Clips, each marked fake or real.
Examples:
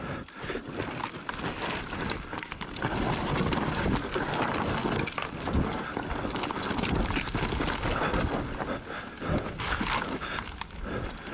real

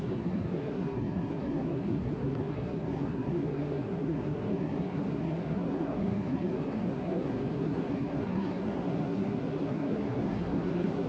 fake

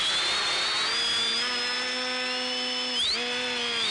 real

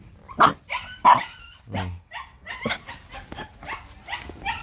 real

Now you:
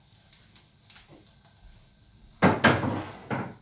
real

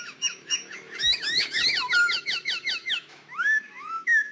fake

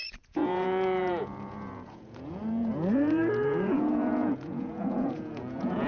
fake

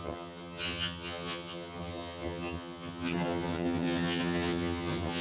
fake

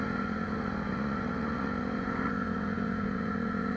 fake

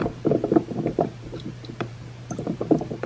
fake